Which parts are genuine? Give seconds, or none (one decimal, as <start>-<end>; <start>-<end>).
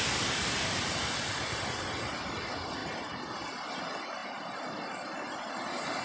0.0-0.4; 1.5-6.0